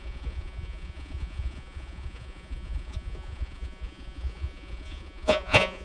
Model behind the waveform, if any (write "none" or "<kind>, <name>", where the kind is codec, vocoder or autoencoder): vocoder, Vocos